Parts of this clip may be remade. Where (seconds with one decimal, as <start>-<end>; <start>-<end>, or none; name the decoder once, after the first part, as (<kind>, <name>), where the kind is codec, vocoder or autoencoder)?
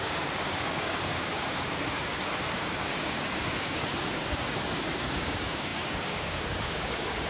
0.0-7.3 (codec, DAC)